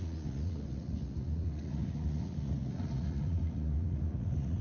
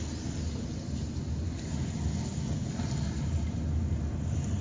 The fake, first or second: first